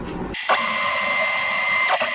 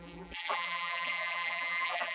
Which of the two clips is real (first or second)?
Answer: first